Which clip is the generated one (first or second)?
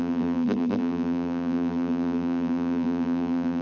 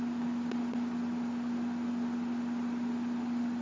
first